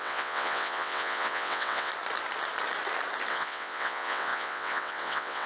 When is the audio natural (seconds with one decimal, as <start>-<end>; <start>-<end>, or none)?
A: 1.9-3.3